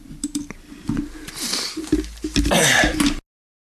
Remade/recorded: recorded